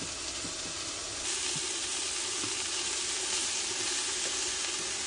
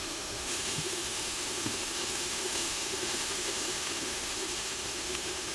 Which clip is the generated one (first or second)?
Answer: second